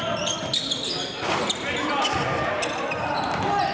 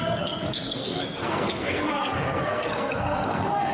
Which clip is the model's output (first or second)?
second